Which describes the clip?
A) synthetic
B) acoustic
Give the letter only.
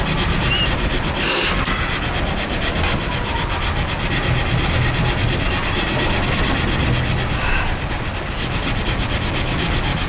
B